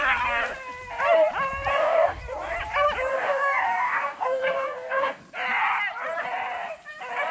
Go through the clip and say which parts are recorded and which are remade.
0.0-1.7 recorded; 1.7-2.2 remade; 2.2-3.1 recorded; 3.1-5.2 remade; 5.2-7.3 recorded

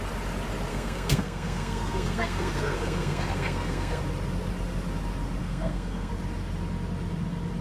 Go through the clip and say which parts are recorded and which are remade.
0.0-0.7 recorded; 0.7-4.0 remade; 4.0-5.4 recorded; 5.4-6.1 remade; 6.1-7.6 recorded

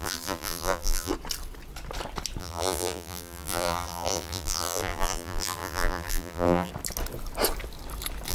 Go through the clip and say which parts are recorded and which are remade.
0.0-1.1 remade; 1.1-2.4 recorded; 2.4-6.7 remade; 6.7-8.3 recorded

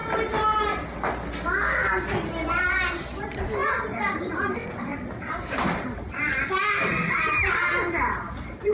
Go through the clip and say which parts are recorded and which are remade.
0.0-2.9 recorded; 2.9-3.6 remade; 3.6-4.3 recorded; 4.3-8.7 remade

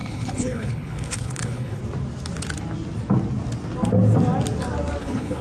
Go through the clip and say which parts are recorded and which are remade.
0.0-1.8 remade; 1.8-5.0 recorded; 5.0-5.4 remade

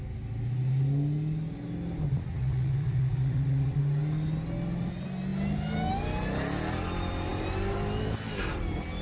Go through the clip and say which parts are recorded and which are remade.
0.0-2.1 recorded; 2.1-3.8 remade; 3.8-9.0 recorded

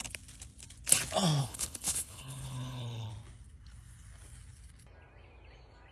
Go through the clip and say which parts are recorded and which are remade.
0.0-1.4 recorded; 1.4-3.1 remade; 3.1-5.9 recorded

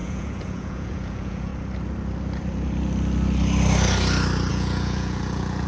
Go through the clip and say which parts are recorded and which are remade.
0.0-1.5 remade; 1.5-4.5 recorded; 4.5-5.7 remade